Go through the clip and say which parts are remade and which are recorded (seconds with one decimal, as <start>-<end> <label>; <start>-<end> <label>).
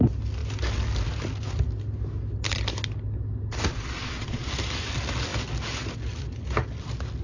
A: 0.0-3.7 recorded; 3.7-4.5 remade; 4.5-7.2 recorded